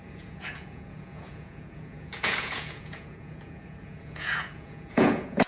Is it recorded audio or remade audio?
remade